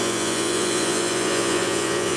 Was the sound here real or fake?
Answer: fake